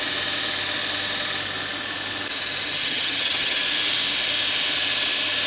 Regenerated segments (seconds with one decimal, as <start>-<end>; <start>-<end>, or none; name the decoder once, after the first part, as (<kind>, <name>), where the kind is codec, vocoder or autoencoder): 2.8-3.6 (vocoder, HiFi-GAN)